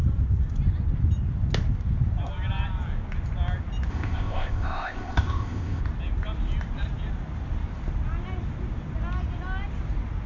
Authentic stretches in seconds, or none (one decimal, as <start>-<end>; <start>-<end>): 0.0-3.9; 5.8-10.3